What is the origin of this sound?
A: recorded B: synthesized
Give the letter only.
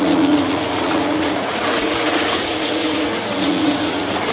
B